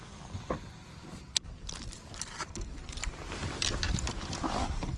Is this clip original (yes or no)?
yes